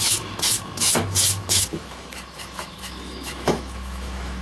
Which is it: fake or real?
fake